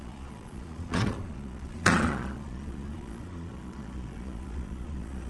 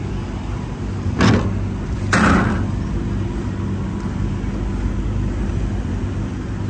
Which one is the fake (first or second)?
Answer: first